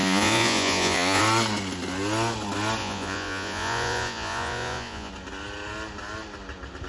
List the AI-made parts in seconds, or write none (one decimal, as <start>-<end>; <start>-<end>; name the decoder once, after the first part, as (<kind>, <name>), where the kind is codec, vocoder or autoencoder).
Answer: 0.0-1.2 (vocoder, Vocos); 2.8-5.1